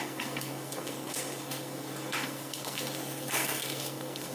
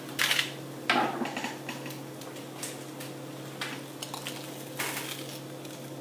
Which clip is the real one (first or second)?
second